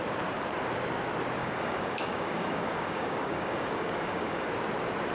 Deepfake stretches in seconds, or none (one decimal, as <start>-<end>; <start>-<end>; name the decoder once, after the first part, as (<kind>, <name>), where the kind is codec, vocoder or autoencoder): 1.4-4.5 (codec, DAC)